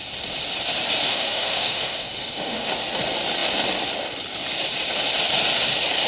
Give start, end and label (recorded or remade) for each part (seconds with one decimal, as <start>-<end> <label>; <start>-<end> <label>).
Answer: 0.0-1.1 recorded; 1.1-2.7 remade; 2.7-6.1 recorded